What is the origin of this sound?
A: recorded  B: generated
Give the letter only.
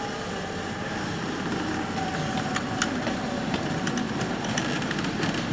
A